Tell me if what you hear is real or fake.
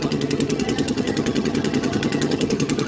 fake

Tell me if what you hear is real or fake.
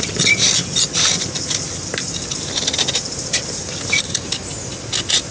real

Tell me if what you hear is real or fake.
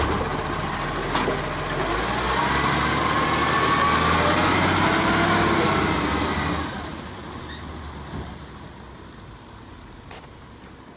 real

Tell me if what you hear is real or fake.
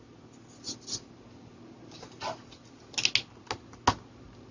real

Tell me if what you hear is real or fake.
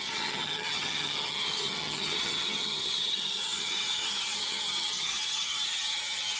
fake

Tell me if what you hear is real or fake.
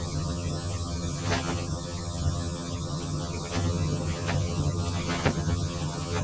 fake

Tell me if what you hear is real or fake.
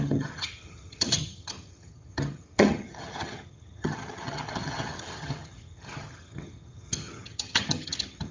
fake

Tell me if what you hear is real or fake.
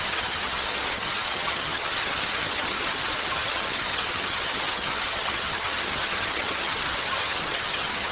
fake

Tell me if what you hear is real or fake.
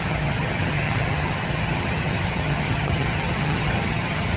fake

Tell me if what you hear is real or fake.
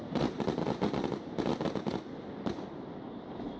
real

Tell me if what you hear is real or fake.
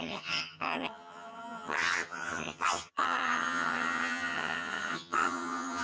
fake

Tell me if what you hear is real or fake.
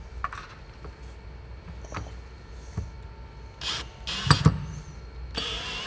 real